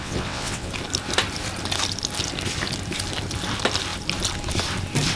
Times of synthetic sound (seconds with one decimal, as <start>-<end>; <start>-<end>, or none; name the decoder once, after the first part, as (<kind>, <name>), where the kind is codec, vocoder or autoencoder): 0.0-0.7 (vocoder, WaveNeXt)